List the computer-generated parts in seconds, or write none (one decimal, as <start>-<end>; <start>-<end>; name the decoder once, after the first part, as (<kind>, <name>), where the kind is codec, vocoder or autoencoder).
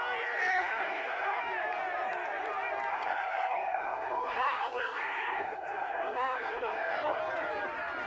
0.5-1.4 (codec, SNAC); 2.9-7.2